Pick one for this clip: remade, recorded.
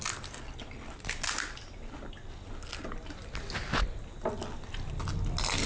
recorded